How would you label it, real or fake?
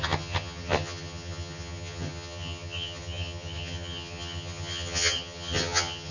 fake